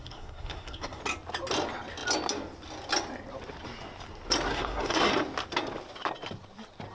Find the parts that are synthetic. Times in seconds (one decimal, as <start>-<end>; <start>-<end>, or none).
0.0-1.0; 4.5-5.1